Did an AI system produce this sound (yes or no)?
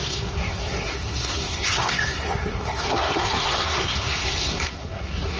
yes